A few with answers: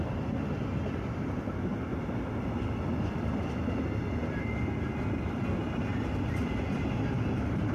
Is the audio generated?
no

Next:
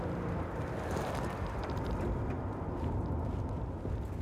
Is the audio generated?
no